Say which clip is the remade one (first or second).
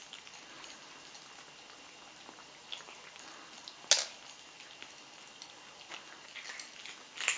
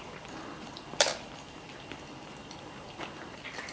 second